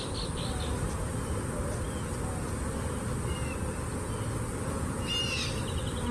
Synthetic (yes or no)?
no